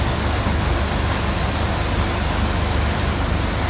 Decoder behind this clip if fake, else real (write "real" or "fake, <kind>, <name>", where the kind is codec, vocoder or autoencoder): real